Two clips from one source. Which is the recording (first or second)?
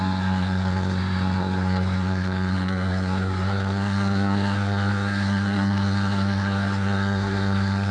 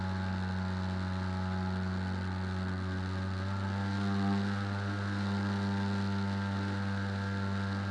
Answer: second